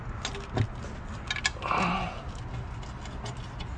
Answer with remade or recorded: recorded